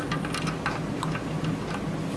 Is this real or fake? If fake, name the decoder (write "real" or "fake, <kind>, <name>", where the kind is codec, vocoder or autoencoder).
real